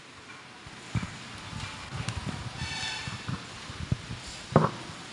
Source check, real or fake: real